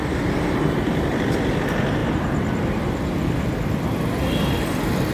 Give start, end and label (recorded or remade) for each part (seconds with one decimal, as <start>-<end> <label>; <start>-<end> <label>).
0.0-5.1 recorded